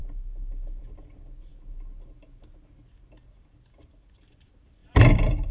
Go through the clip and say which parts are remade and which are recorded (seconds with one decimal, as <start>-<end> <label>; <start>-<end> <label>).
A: 0.0-4.8 recorded; 4.8-5.5 remade